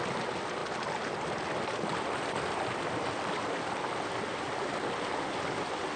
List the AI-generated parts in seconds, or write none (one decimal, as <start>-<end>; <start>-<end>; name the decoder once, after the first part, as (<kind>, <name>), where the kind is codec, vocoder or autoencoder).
none